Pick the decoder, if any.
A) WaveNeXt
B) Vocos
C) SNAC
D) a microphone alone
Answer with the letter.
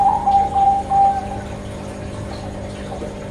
D